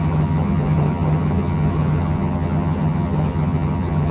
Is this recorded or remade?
remade